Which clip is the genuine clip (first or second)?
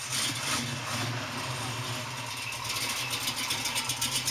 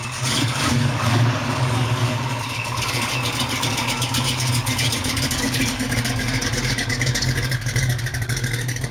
first